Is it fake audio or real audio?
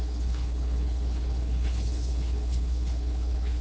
fake